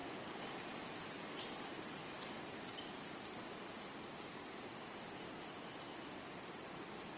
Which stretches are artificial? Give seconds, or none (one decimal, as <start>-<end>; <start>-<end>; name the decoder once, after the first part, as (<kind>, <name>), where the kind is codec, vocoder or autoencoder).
none